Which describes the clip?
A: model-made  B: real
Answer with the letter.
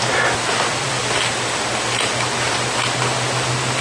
B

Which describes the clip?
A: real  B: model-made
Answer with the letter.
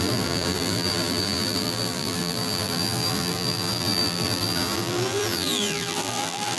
B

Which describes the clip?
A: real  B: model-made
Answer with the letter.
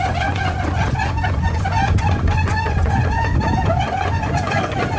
B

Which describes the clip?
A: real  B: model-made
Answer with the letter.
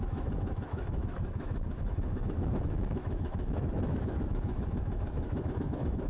B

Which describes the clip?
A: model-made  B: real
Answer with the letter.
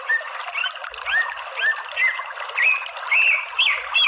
B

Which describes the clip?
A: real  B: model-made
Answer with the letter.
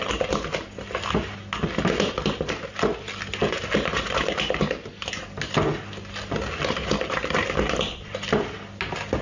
A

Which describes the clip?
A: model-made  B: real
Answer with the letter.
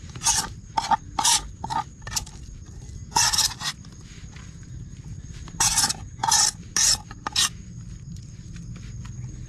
B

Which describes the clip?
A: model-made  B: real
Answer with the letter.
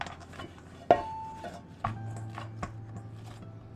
B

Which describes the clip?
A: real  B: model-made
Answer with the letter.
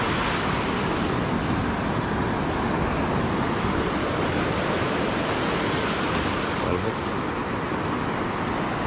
A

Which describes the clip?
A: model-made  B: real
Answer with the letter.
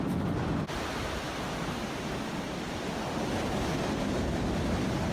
B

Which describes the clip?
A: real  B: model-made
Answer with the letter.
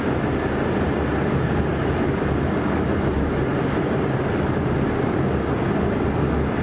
A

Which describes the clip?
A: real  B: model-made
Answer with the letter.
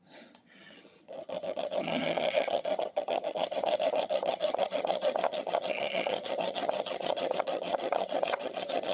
B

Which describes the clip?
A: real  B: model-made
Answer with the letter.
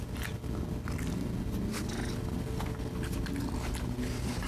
A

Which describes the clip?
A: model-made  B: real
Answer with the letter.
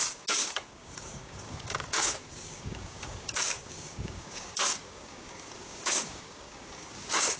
A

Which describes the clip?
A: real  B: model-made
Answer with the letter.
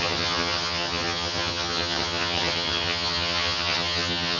B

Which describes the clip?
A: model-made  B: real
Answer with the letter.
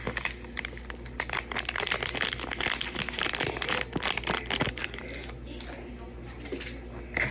B